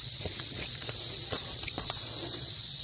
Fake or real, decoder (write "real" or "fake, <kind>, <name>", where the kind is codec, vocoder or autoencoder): fake, vocoder, Vocos